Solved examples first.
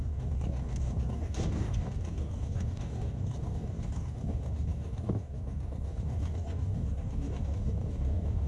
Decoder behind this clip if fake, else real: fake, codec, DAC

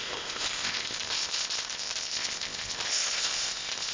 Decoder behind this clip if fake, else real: fake, codec, ZipCodec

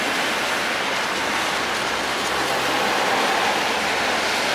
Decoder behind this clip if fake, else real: real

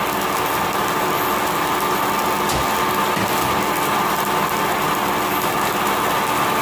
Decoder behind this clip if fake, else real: real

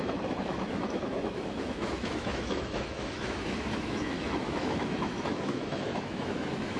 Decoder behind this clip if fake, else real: fake, autoencoder, DAC-VAE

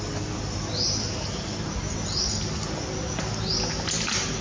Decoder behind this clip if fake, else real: real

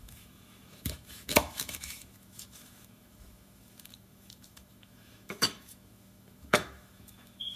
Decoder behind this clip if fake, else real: fake, autoencoder, DAC-VAE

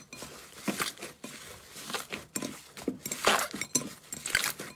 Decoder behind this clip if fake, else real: real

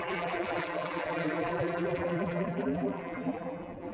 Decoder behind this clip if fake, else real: fake, vocoder, BigVGAN v2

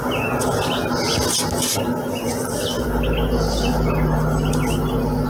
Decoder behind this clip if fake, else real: real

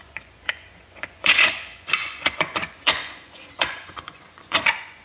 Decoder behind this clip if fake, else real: fake, vocoder, Vocos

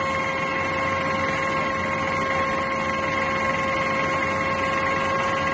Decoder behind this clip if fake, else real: real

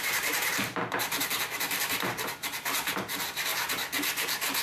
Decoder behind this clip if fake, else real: fake, vocoder, BigVGAN v2